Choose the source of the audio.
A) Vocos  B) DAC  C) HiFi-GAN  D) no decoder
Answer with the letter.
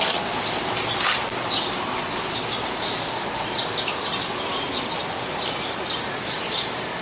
D